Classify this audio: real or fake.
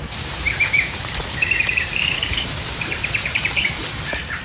fake